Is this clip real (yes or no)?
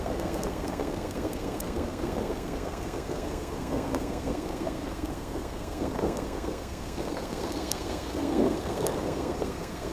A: no